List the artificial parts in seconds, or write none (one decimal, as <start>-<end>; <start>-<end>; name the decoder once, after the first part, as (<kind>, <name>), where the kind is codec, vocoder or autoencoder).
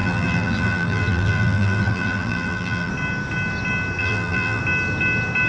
0.0-2.9 (vocoder, BigVGAN v2); 4.0-4.6